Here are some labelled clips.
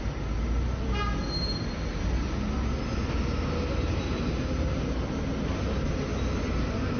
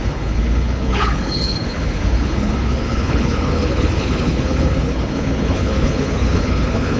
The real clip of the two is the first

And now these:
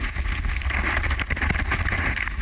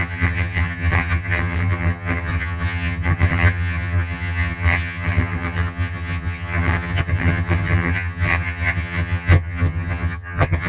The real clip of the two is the first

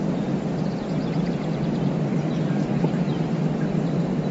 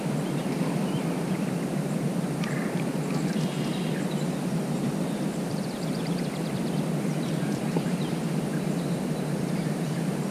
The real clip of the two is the first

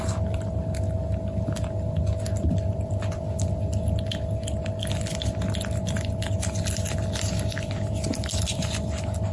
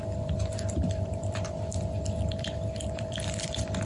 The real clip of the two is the first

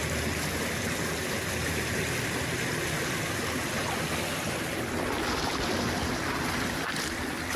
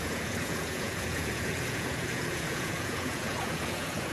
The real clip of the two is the first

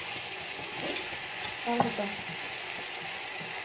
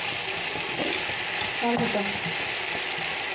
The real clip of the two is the second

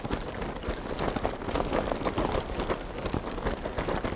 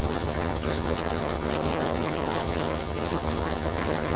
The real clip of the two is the first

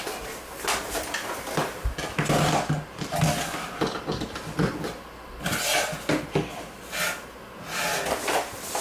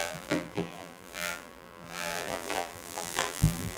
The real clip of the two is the first